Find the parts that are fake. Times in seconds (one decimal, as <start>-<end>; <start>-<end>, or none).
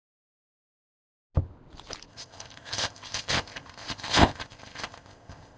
2.1-5.6